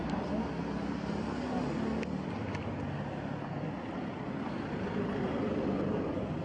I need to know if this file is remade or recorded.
recorded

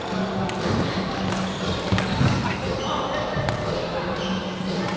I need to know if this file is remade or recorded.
recorded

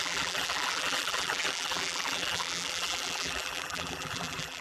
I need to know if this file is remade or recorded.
remade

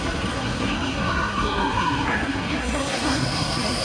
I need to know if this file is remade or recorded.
remade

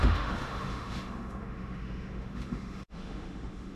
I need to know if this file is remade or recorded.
remade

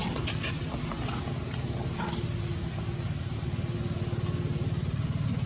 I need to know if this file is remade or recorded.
recorded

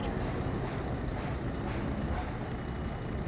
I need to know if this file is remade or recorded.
recorded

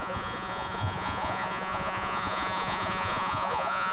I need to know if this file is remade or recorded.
remade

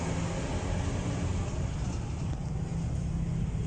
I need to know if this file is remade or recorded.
recorded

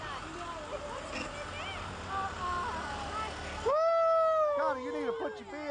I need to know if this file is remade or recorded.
recorded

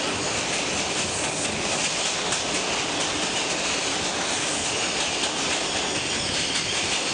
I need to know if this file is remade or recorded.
recorded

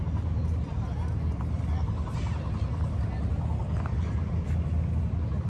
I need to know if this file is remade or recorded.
recorded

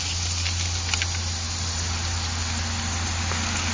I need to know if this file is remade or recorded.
recorded